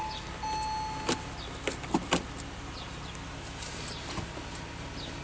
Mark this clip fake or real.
real